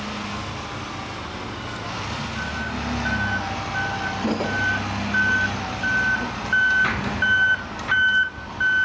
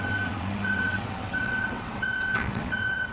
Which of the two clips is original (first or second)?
first